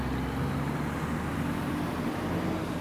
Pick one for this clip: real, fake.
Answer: real